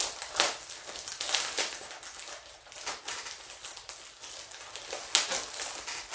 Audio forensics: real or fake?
real